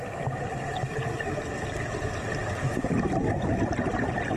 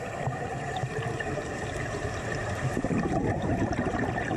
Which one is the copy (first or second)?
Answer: second